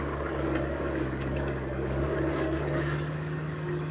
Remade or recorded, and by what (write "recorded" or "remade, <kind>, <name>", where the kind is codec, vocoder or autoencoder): remade, codec, DAC